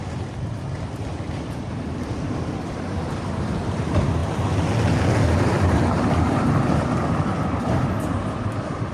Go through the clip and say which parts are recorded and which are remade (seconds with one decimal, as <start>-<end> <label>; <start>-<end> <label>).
0.0-4.2 remade; 4.2-5.4 recorded; 5.4-8.9 remade